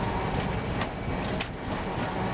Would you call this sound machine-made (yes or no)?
no